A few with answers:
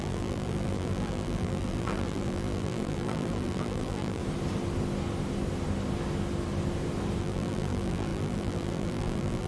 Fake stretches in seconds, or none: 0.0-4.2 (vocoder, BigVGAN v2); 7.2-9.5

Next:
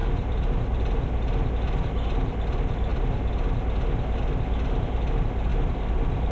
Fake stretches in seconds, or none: 0.0-1.5 (vocoder, BigVGAN v2); 5.5-6.3

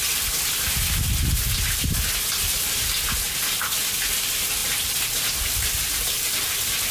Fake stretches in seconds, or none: none

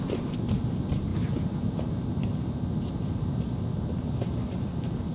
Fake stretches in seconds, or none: 0.0-1.1 (vocoder, BigVGAN v2); 3.2-5.1

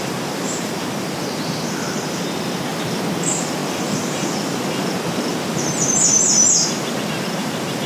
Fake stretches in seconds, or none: 0.0-2.7 (vocoder, BigVGAN v2); 3.2-7.9